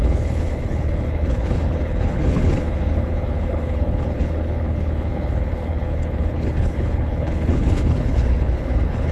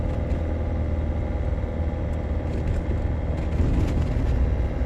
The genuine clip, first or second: second